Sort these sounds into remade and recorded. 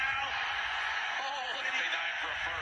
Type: remade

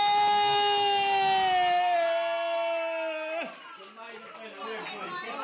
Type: recorded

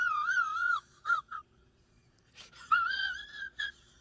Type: remade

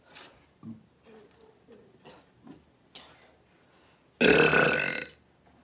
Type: recorded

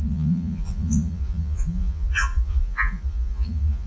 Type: remade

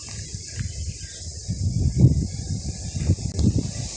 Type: recorded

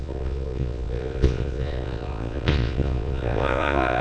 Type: remade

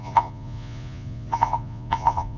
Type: remade